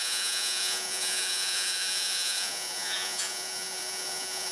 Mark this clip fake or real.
fake